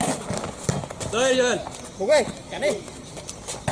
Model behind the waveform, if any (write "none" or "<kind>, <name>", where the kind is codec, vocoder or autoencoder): none